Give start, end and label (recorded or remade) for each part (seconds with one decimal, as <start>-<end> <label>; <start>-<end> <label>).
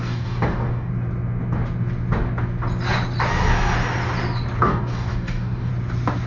0.0-0.9 remade; 0.9-4.6 recorded; 4.6-5.7 remade; 5.7-6.3 recorded